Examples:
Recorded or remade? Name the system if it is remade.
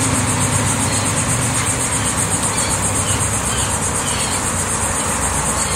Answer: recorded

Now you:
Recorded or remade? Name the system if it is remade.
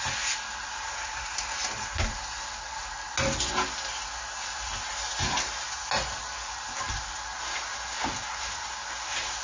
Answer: recorded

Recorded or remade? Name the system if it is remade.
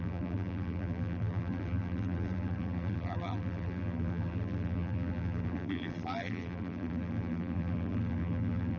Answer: remade, vocoder, BigVGAN v2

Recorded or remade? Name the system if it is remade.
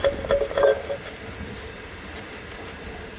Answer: recorded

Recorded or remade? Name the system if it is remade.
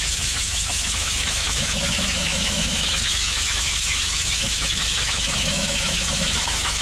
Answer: remade, autoencoder, DAC-VAE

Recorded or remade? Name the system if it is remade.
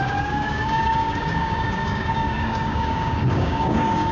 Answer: remade, codec, DAC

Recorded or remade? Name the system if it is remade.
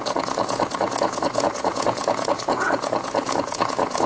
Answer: remade, vocoder, Vocos